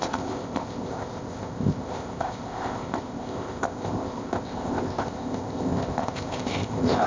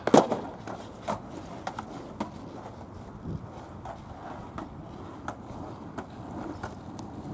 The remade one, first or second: first